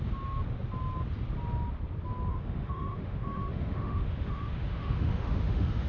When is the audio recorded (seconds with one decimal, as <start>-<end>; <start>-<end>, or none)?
0.0-2.3